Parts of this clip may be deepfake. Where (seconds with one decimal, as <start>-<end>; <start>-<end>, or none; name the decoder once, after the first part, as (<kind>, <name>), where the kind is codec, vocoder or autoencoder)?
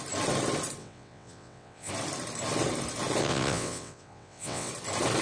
0.8-1.9 (vocoder, WaveNeXt); 3.2-4.7